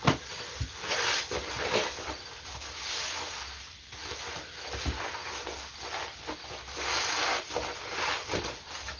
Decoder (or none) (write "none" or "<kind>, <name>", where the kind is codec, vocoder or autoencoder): none